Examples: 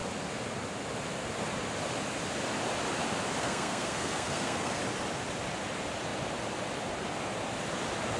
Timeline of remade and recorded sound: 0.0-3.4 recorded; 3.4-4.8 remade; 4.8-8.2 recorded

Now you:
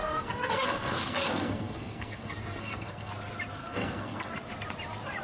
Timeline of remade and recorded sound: 0.0-3.1 remade; 3.1-3.6 recorded; 3.6-4.3 remade; 4.3-5.2 recorded

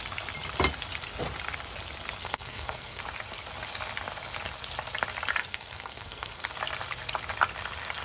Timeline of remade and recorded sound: 0.0-2.2 recorded; 2.2-3.0 remade; 3.0-5.4 recorded; 5.4-6.5 remade; 6.5-8.0 recorded

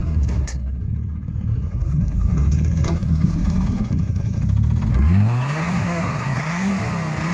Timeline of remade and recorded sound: 0.0-4.4 remade; 4.4-4.9 recorded; 4.9-6.7 remade; 6.7-7.3 recorded

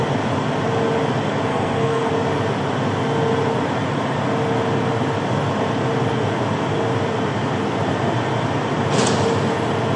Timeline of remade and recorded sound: 0.0-1.5 recorded; 1.5-2.1 remade; 2.1-10.0 recorded

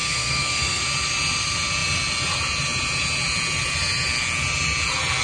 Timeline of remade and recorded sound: 0.0-0.8 remade; 0.8-5.2 recorded